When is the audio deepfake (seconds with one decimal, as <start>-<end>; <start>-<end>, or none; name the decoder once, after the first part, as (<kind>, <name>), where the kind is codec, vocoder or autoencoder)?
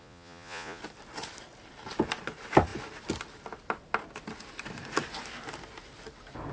0.0-0.8 (vocoder, Vocos)